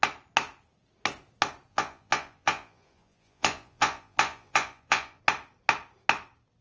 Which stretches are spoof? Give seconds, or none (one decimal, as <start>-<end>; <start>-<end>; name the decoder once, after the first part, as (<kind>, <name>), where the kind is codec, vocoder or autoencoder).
1.7-5.2 (vocoder, Vocos)